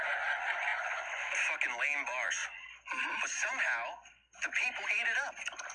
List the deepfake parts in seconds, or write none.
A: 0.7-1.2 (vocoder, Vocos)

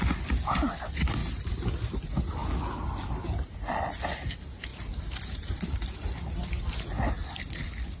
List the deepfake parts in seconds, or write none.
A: 1.2-1.7 (vocoder, BigVGAN v2)

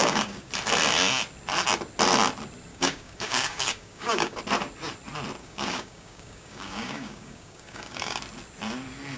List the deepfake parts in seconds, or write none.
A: 0.0-0.5 (codec, DAC); 2.7-4.4; 5.4-8.2

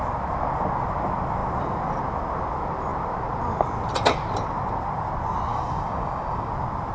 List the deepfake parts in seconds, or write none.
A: 5.5-6.5 (codec, DAC)